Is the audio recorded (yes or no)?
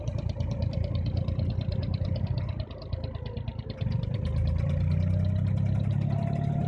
yes